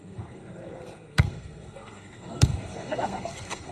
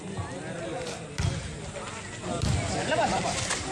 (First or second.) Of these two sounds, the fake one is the first